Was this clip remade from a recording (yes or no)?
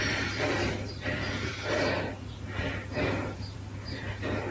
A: yes